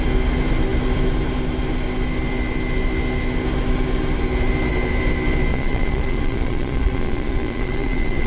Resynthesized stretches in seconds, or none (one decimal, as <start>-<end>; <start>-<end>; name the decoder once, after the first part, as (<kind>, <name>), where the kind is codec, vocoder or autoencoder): 5.5-8.3 (vocoder, Vocos)